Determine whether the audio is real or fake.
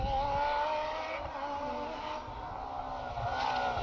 real